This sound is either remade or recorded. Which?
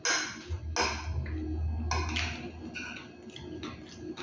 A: recorded